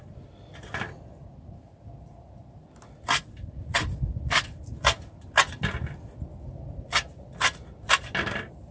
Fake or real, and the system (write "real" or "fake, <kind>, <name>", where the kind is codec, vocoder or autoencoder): real